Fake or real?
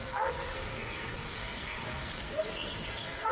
fake